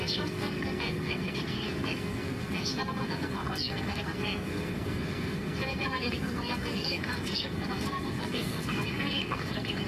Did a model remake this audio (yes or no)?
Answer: yes